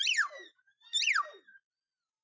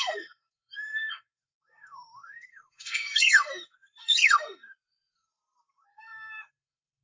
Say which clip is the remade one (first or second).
second